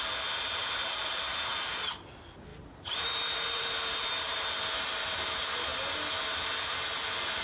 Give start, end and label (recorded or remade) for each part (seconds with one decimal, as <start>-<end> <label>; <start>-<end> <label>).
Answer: 0.0-2.5 recorded; 2.5-4.4 remade; 4.4-7.4 recorded